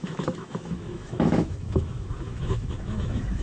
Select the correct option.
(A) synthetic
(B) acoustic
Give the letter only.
A